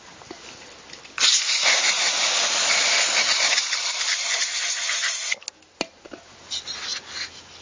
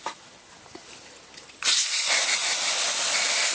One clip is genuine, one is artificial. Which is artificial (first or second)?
second